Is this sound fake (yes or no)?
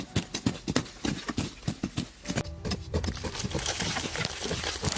no